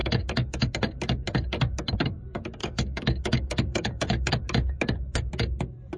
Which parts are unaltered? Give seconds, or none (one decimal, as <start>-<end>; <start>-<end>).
0.7-2.6; 4.3-6.0